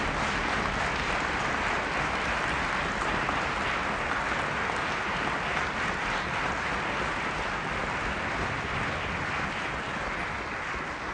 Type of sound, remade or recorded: recorded